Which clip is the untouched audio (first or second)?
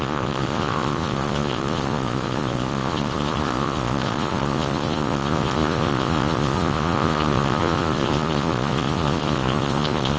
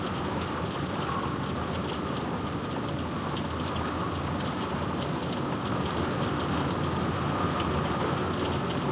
second